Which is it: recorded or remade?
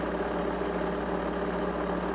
recorded